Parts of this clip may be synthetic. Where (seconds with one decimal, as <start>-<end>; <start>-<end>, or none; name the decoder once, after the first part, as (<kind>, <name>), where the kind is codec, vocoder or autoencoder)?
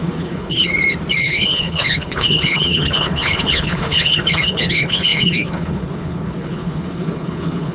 0.0-0.7 (codec, HILCodec); 1.2-7.7